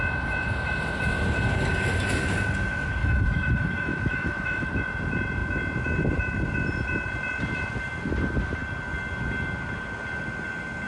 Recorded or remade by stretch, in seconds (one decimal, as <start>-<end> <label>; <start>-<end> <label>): 0.0-3.0 recorded; 3.0-4.7 remade; 4.7-10.9 recorded